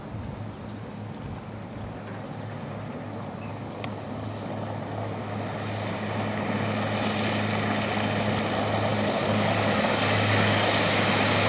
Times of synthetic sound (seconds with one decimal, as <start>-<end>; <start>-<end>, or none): 3.5-4.5; 8.9-10.9